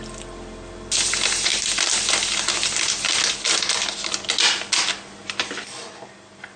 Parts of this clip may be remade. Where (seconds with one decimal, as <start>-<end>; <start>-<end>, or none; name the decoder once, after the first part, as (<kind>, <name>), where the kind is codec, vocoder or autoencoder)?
none